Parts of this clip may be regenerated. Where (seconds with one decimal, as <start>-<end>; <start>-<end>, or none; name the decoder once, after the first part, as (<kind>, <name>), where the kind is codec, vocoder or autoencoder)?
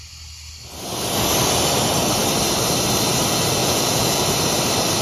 3.6-4.2 (vocoder, Vocos)